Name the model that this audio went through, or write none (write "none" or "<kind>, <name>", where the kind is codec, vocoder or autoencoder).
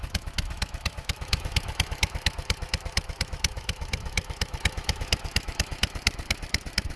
autoencoder, DAC-VAE